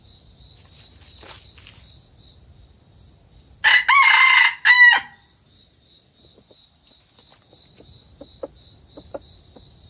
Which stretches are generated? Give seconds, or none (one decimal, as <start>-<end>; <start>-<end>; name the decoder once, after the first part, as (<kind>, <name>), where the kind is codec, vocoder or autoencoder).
none